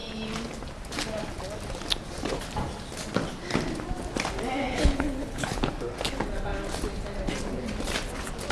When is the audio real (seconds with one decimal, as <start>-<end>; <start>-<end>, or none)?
0.0-4.6; 5.7-8.5